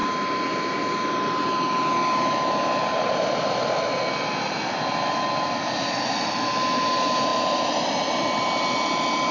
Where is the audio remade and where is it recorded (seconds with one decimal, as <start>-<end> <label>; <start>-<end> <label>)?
0.0-9.3 recorded